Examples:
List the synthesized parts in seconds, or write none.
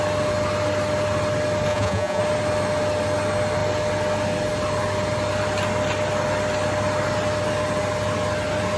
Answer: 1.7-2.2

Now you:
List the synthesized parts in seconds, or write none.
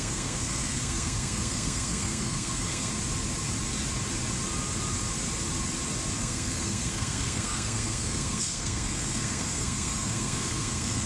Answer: 0.0-2.9; 6.2-11.1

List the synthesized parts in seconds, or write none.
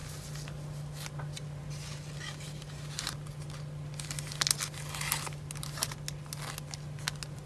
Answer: none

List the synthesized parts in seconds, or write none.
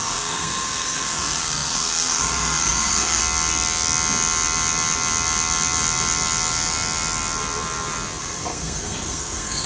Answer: 0.0-3.2; 8.2-9.7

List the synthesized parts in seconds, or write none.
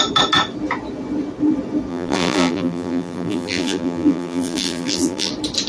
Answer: 1.9-5.3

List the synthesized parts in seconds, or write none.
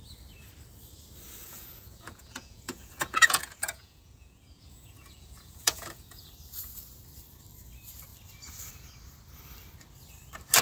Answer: 1.4-6.3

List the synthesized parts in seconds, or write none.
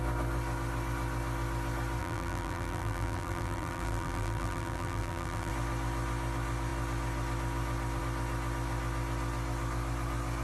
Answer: 2.0-5.5